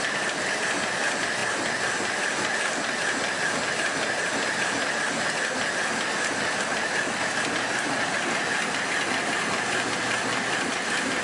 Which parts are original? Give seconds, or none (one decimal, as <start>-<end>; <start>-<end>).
0.0-11.2